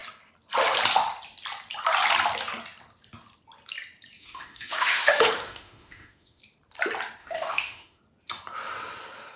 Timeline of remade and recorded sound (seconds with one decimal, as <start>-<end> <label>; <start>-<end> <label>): 0.0-4.2 recorded; 4.2-6.4 remade; 6.4-7.2 recorded; 7.2-8.0 remade; 8.0-9.4 recorded